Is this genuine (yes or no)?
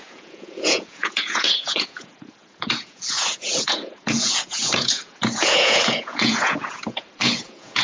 no